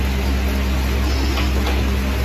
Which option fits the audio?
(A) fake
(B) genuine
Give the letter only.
B